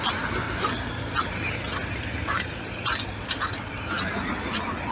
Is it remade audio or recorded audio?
recorded